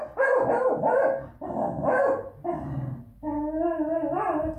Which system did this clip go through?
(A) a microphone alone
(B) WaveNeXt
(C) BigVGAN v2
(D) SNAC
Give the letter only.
A